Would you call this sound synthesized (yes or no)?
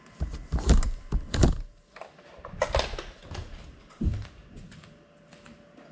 no